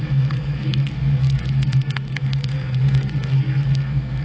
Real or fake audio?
fake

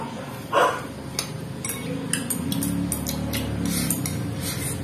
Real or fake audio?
real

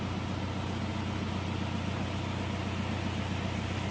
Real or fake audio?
real